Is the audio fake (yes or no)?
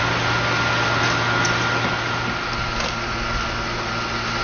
no